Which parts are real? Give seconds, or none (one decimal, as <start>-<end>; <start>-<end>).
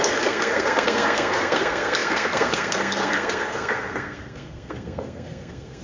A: none